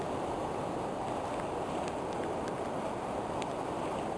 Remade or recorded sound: recorded